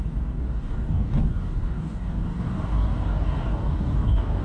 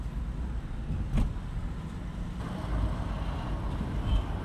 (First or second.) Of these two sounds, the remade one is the first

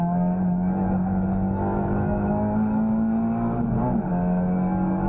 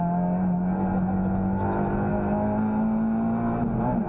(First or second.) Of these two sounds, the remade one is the first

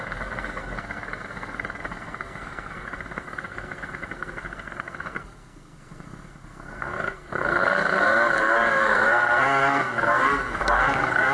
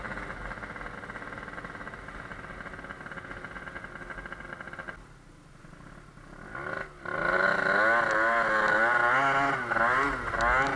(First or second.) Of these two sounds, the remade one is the first